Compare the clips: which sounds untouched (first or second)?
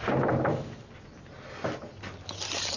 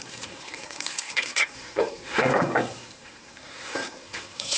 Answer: first